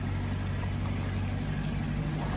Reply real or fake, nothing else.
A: real